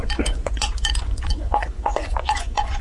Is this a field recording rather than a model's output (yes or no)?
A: no